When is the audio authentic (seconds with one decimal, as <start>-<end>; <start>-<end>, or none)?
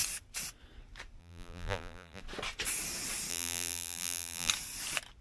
0.0-1.2; 2.2-3.3; 4.5-5.2